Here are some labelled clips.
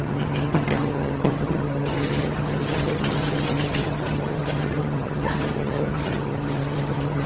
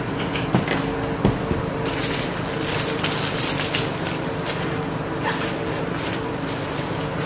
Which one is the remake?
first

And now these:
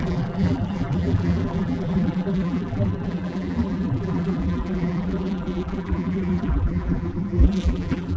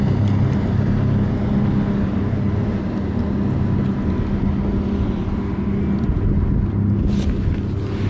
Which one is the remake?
first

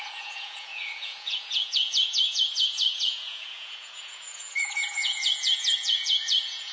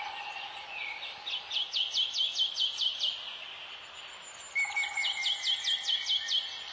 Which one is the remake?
first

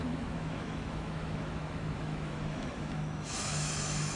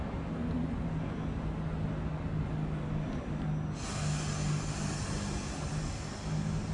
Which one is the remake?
first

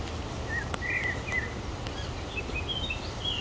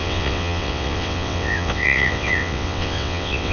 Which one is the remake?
second